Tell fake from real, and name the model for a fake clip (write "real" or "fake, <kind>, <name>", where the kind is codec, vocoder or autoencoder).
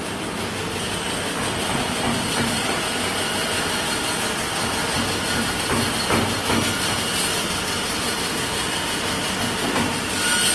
real